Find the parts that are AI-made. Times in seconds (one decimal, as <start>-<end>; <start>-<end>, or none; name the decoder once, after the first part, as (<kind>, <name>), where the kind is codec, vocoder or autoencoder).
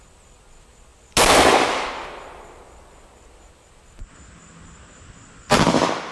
none